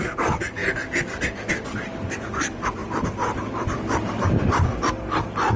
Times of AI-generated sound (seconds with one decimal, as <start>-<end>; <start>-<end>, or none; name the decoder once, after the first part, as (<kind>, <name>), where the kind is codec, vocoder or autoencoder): 2.8-4.9 (vocoder, BigVGAN v2)